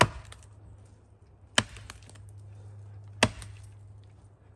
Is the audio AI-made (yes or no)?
no